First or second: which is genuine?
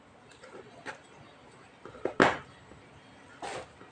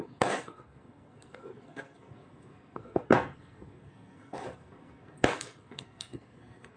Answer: first